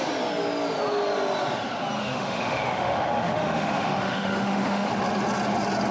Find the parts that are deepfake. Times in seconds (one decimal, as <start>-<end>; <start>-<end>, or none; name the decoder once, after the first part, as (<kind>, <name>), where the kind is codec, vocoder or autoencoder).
2.0-4.9 (autoencoder, DAC-VAE)